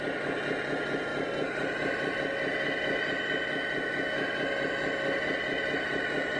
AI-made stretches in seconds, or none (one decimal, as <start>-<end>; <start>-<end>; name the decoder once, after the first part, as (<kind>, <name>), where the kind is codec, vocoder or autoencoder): none